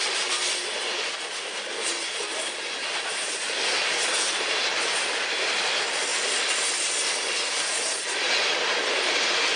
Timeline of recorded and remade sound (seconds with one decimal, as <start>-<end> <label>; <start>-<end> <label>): 0.0-9.6 recorded